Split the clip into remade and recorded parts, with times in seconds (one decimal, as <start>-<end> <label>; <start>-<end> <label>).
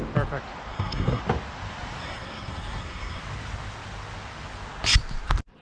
0.0-0.7 recorded; 0.7-1.2 remade; 1.2-2.0 recorded; 2.0-3.2 remade; 3.2-5.6 recorded